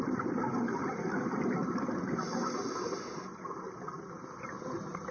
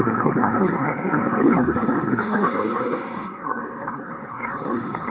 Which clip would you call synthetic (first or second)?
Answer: second